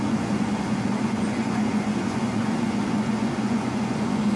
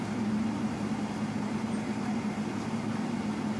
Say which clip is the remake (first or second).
first